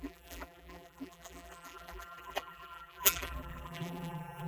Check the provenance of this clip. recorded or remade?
remade